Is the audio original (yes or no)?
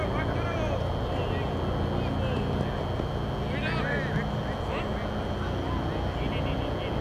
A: yes